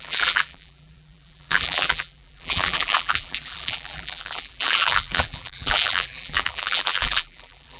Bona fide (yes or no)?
no